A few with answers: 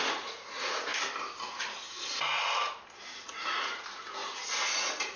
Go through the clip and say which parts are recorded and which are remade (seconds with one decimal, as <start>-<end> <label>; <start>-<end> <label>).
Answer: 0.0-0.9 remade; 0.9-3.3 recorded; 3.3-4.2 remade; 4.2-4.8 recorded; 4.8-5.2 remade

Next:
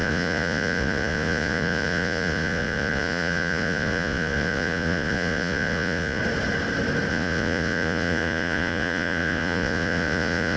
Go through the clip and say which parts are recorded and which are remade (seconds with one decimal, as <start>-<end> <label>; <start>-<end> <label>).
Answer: 0.0-6.2 remade; 6.2-7.1 recorded; 7.1-10.6 remade

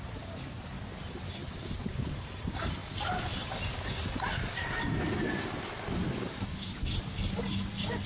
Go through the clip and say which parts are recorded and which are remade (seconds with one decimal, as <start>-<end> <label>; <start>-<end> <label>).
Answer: 0.0-8.1 recorded

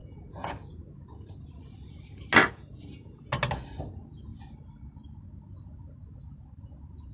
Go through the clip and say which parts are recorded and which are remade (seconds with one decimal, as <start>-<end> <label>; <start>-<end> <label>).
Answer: 0.0-1.3 remade; 1.3-2.4 recorded; 2.4-3.2 remade; 3.2-7.1 recorded

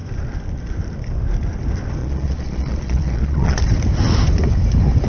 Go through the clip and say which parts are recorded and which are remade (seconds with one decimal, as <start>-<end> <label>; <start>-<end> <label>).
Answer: 0.0-2.0 recorded; 2.0-3.6 remade; 3.6-5.1 recorded

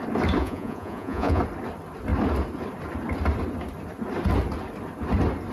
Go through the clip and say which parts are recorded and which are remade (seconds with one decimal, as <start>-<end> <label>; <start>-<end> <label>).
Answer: 0.0-0.4 recorded; 0.4-1.4 remade; 1.4-5.5 recorded